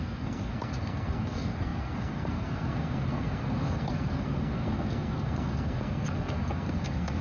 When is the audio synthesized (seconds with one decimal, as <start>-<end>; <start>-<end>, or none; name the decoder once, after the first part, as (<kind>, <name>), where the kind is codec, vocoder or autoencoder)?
0.0-7.2 (codec, SNAC)